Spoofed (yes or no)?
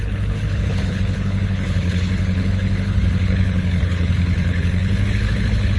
yes